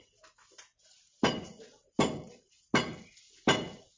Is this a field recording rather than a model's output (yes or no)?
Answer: yes